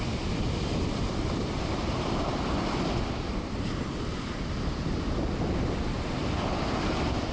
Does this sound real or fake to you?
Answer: real